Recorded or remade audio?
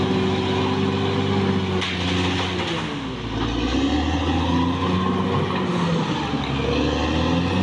recorded